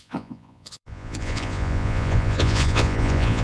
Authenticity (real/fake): fake